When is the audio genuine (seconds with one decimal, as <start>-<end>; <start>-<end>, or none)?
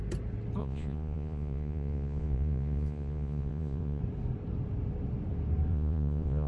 0.0-0.6; 4.0-5.7